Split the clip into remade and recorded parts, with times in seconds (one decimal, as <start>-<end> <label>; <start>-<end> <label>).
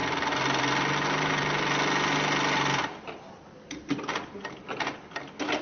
0.0-5.6 recorded